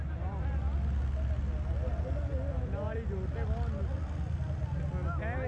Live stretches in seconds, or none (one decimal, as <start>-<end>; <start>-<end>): 0.0-5.5